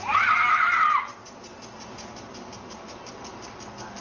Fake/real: real